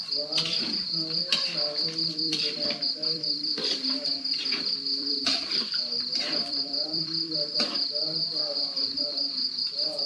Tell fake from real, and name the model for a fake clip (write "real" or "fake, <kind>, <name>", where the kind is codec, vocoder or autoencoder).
fake, vocoder, BigVGAN v2